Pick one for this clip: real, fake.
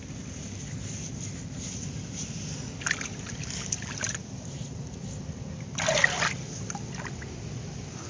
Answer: real